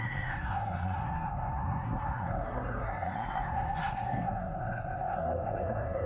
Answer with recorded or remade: remade